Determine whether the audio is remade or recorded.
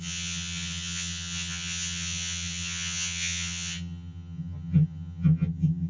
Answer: remade